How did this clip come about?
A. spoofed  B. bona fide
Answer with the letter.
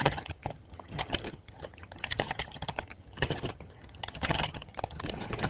A